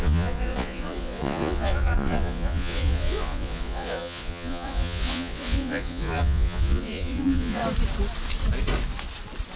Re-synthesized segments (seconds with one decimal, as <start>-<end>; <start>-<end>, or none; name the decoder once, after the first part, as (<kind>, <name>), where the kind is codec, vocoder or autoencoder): 0.0-7.6 (vocoder, Vocos)